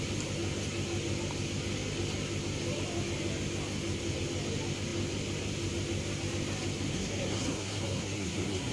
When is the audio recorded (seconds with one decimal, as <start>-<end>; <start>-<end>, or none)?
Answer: 0.0-6.9